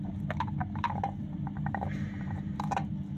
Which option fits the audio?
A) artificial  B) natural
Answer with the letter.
A